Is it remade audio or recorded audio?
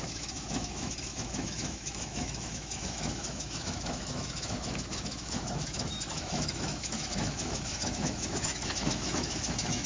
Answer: remade